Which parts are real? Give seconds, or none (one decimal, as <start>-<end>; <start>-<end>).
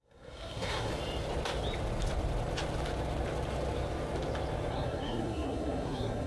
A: 0.9-4.7